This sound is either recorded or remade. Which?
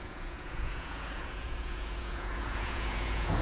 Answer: remade